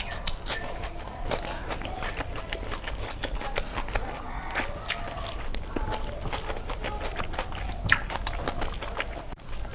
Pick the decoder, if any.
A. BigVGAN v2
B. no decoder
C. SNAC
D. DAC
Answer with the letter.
B